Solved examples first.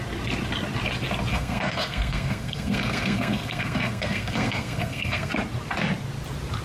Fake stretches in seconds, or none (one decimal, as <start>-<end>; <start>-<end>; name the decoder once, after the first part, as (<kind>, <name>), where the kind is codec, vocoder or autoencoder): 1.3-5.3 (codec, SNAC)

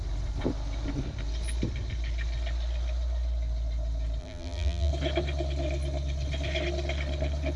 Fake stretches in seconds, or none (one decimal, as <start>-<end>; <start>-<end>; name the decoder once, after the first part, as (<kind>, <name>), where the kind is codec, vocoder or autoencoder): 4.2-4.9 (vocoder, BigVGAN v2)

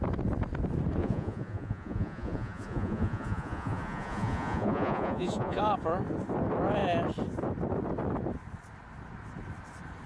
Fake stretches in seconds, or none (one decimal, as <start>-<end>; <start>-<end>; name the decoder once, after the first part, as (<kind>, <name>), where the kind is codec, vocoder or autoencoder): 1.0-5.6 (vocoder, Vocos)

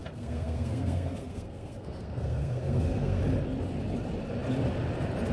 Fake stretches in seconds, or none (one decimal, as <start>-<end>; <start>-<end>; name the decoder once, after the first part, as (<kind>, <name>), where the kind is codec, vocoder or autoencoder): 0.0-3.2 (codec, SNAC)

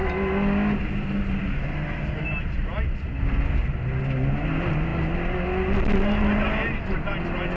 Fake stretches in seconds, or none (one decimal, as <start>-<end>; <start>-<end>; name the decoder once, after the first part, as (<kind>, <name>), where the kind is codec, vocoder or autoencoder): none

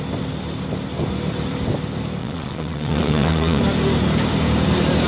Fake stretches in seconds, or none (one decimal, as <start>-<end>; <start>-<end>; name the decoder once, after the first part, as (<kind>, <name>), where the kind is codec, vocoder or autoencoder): 2.2-3.6 (vocoder, WaveNeXt)